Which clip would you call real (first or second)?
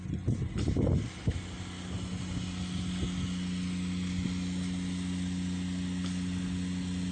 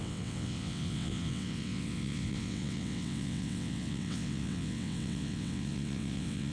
first